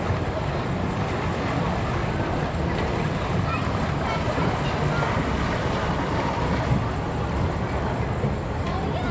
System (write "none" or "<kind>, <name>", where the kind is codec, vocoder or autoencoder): none